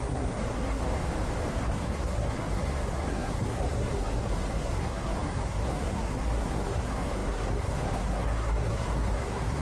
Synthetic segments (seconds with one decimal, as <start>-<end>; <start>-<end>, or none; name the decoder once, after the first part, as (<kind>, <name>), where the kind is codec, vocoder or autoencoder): 0.0-0.8 (codec, SNAC); 1.5-9.6